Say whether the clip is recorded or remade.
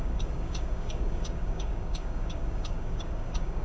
remade